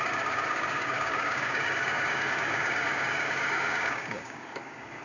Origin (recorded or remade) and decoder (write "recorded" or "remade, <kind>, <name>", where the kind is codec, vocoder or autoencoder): remade, codec, DAC